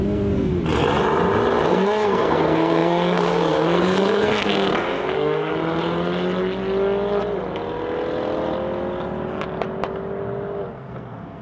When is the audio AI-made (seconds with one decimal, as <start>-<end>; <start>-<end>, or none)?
0.0-0.5; 1.7-5.5; 10.7-11.4